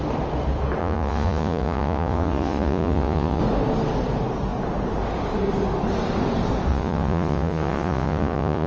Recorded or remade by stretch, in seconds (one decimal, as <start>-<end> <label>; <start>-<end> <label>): 0.0-0.8 recorded; 0.8-3.4 remade; 3.4-6.7 recorded; 6.7-8.7 remade